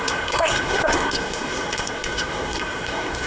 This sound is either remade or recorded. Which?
remade